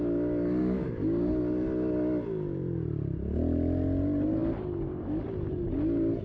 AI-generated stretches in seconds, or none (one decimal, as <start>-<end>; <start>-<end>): 0.6-1.3